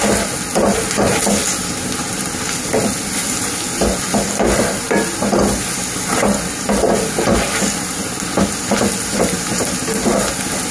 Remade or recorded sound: recorded